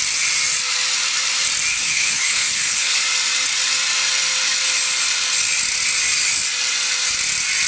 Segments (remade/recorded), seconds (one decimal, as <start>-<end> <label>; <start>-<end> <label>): 0.0-1.7 recorded; 1.7-3.0 remade; 3.0-7.7 recorded